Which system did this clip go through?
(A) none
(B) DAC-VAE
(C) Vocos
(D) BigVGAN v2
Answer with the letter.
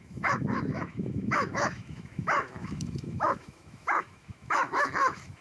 B